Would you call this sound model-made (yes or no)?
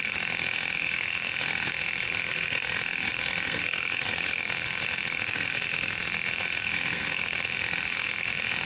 yes